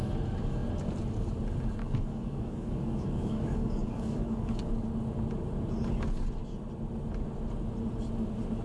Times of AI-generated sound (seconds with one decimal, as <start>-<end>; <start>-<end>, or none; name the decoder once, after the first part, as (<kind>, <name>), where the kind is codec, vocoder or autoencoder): 1.8-4.7 (codec, DAC)